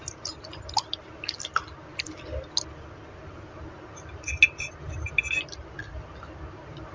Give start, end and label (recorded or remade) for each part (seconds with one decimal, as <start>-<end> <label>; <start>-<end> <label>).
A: 0.0-6.9 recorded